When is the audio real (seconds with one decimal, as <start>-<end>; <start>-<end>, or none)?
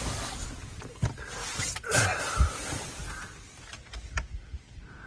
0.0-1.4; 2.2-5.1